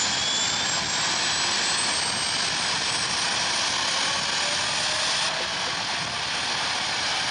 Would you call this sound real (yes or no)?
yes